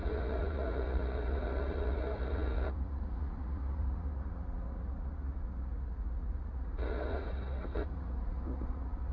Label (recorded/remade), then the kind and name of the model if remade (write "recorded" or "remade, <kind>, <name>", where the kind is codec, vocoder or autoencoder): remade, vocoder, Vocos